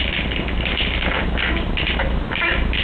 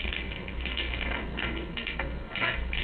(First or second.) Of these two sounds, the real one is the first